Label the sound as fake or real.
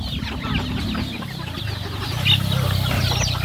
real